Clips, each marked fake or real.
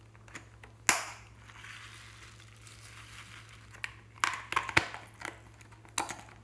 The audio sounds real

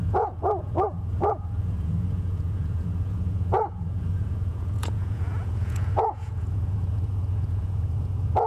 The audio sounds fake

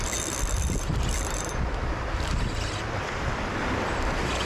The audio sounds real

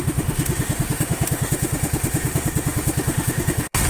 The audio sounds fake